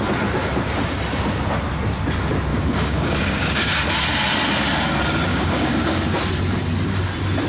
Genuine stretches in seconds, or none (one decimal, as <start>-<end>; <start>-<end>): 0.0-2.5; 3.7-5.3; 6.0-7.5